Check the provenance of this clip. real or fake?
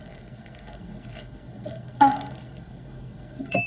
fake